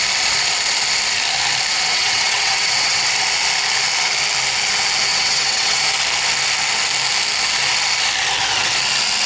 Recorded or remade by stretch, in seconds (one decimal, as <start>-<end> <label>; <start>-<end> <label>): 0.0-1.9 recorded; 1.9-3.1 remade; 3.1-5.1 recorded; 5.1-5.8 remade; 5.8-9.3 recorded